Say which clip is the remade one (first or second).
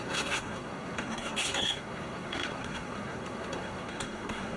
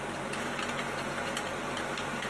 first